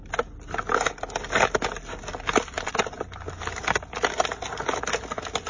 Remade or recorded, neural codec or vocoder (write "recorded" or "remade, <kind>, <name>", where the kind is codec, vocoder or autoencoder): recorded